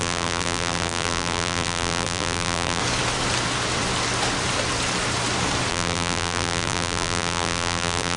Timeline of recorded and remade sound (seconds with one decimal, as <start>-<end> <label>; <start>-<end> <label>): 0.0-2.8 remade; 2.8-5.7 recorded; 5.7-8.2 remade